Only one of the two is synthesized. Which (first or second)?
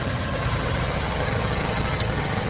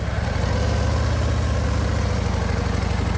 first